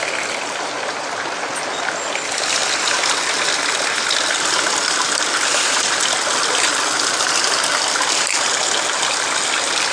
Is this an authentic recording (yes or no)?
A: yes